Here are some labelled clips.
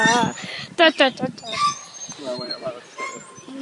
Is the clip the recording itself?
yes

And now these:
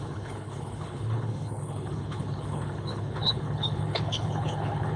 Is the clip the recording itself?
no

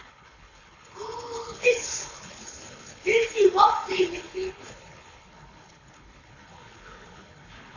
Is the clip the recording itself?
no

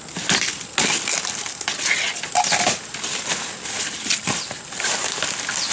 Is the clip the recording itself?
yes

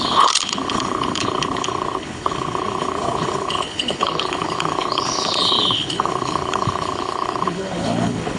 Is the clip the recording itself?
no